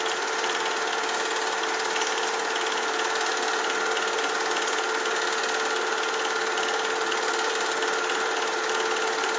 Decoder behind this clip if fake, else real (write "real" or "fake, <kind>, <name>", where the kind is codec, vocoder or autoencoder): real